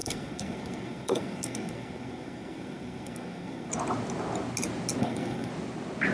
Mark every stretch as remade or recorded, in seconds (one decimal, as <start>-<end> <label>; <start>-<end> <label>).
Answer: 0.0-3.7 remade; 3.7-5.0 recorded; 5.0-5.5 remade; 5.5-6.1 recorded